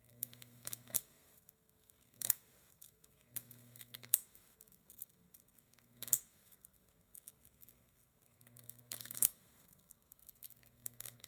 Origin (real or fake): fake